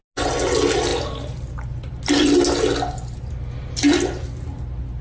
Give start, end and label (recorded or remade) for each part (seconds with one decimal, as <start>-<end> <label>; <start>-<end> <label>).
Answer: 0.0-5.0 recorded